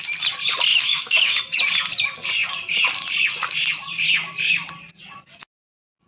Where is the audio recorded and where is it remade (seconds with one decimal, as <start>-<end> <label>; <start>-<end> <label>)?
0.0-0.7 recorded; 0.7-1.4 remade; 1.4-6.1 recorded